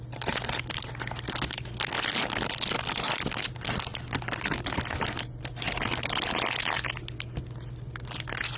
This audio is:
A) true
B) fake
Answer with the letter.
A